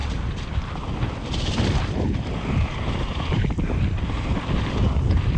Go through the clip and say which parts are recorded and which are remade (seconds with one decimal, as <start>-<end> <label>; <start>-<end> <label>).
0.0-5.4 remade